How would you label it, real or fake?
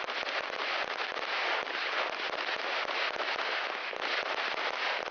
real